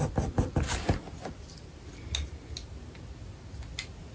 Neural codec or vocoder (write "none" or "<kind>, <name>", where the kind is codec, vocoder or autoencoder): none